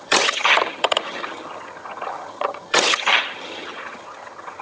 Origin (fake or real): fake